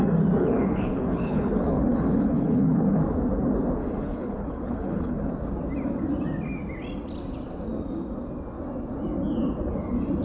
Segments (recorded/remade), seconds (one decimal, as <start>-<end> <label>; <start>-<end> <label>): 0.0-0.4 recorded; 0.4-3.0 remade; 3.0-3.8 recorded; 3.8-5.3 remade; 5.3-10.2 recorded